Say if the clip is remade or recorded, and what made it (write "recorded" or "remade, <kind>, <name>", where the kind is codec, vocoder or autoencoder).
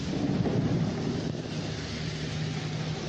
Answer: recorded